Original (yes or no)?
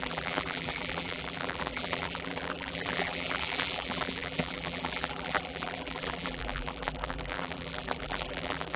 no